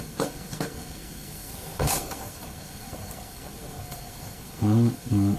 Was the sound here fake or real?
fake